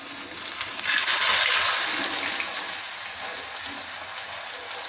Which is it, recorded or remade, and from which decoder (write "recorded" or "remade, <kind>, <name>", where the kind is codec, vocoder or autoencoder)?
recorded